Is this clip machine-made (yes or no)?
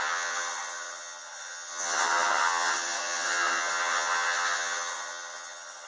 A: yes